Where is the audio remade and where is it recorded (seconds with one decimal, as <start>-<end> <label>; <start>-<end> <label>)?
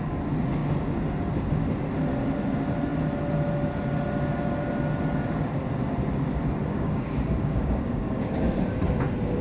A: 0.0-6.6 recorded; 6.6-8.7 remade; 8.7-9.4 recorded